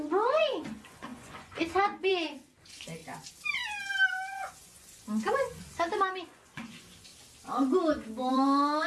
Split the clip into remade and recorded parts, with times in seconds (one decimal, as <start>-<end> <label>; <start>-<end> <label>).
0.0-3.0 remade; 3.0-4.3 recorded; 4.3-7.1 remade; 7.1-8.3 recorded; 8.3-8.9 remade